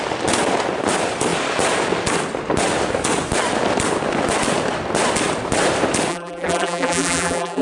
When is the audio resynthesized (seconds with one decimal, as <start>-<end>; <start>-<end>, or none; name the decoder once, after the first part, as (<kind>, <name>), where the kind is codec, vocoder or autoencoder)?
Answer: 6.1-7.6 (vocoder, BigVGAN v2)